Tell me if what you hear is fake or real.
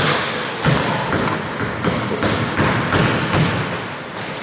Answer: real